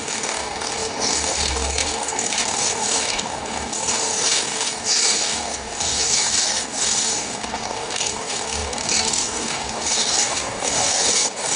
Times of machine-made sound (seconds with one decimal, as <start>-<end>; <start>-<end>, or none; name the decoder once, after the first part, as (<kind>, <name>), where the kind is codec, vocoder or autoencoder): 0.0-11.6 (codec, DAC)